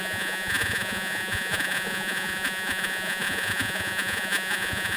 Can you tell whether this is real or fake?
fake